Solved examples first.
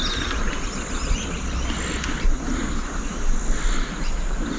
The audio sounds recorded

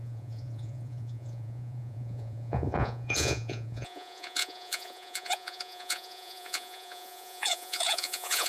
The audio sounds remade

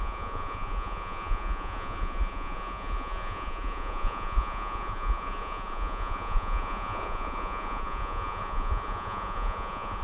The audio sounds remade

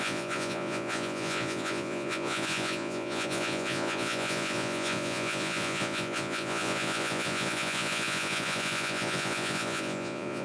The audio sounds remade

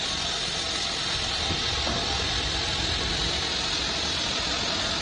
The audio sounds recorded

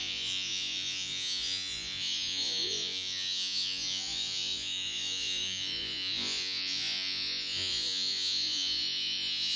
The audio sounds remade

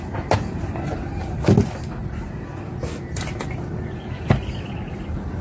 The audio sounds recorded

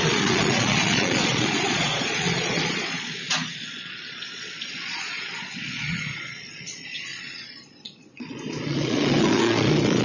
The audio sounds remade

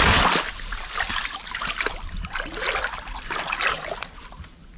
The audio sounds recorded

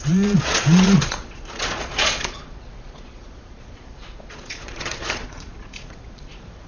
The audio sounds remade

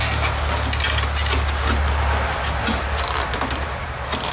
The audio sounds recorded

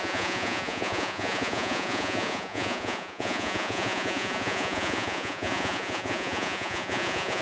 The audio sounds remade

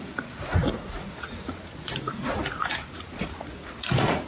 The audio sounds remade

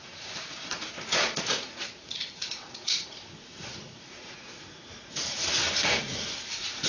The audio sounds remade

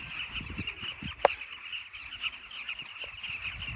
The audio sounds recorded